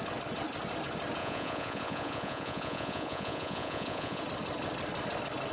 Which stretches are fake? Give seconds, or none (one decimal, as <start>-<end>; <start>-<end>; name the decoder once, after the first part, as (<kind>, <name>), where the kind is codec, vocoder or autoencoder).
1.2-4.2 (vocoder, Vocos)